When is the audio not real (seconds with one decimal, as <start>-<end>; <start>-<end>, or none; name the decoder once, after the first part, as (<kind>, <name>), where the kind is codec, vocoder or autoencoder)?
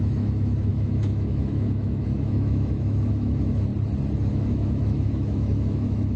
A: 0.0-3.7 (autoencoder, DAC-VAE); 4.3-6.2